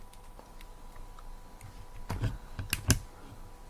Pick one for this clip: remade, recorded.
recorded